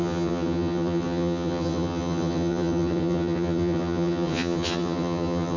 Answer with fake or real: fake